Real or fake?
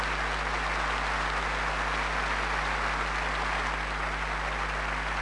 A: real